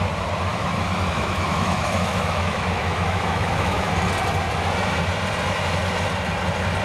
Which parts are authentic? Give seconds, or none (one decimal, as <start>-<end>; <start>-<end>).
0.0-0.5; 3.9-6.8

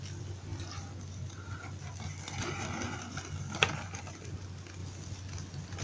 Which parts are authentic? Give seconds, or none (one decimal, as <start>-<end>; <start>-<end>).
0.0-5.8

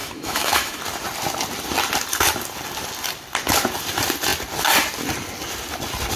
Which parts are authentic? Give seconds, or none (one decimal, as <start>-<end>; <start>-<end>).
0.8-6.2

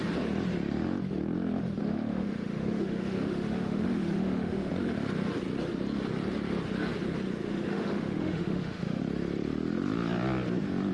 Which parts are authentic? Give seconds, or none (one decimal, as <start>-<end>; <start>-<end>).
0.0-1.8; 4.7-7.4; 9.0-10.9